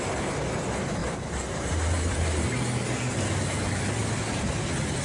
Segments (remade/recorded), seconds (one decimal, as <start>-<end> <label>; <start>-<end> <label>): 0.0-1.0 recorded; 1.0-2.5 remade; 2.5-4.0 recorded; 4.0-4.5 remade; 4.5-5.0 recorded